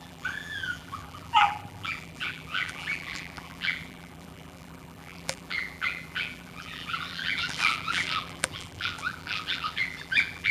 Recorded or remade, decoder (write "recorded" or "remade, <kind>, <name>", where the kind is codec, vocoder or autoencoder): remade, vocoder, BigVGAN v2